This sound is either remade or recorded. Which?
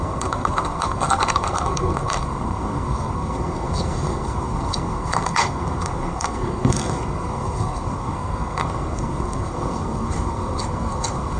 remade